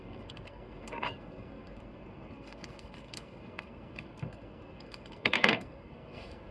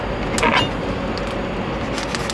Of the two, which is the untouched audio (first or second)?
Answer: second